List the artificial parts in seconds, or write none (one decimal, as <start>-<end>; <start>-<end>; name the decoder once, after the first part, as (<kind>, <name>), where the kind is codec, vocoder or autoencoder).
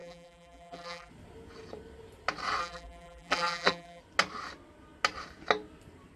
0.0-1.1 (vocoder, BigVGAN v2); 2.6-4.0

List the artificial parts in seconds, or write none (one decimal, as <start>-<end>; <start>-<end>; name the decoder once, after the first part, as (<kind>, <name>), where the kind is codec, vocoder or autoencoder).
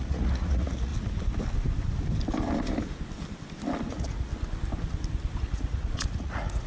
0.0-0.9 (vocoder, Vocos); 3.9-4.3; 5.4-6.7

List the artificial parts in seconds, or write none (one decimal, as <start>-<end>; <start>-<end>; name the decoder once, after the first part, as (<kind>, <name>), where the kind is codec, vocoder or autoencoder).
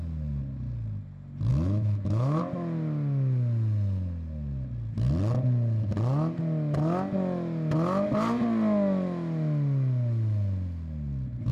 1.5-2.4 (autoencoder, DAC-VAE)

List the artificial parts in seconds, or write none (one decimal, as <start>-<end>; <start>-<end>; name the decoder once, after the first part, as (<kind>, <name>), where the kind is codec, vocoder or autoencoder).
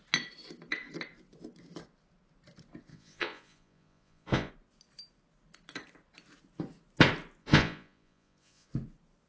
2.9-4.5 (vocoder, Vocos); 7.4-8.7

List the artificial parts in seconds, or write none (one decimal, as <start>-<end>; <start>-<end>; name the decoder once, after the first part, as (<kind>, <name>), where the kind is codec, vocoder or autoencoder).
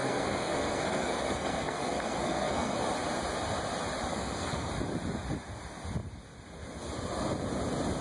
0.0-2.8 (codec, SNAC); 4.1-4.7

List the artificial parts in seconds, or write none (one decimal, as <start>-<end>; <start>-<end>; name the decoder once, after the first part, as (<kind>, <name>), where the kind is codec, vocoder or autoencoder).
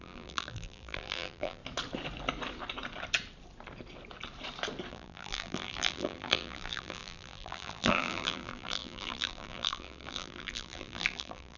0.0-1.6 (vocoder, BigVGAN v2); 4.9-11.6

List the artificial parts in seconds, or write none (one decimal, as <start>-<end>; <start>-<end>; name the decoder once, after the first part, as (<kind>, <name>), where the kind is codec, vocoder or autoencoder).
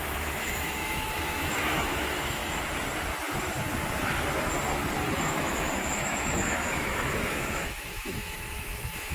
0.0-2.4 (autoencoder, DAC-VAE); 5.1-9.1